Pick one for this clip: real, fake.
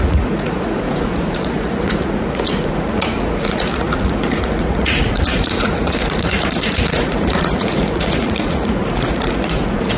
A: fake